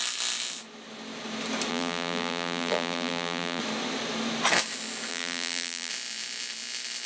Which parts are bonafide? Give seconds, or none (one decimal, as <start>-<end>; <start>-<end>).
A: 0.0-1.7; 3.6-5.1; 5.9-7.1